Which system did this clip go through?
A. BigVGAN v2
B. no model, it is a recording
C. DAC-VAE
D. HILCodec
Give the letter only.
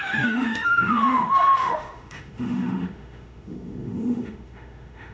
C